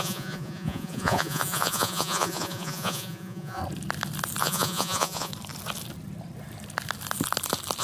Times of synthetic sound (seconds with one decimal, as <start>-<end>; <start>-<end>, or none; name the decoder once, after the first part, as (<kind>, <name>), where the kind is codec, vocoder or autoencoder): 0.0-3.6 (vocoder, Vocos); 4.4-5.3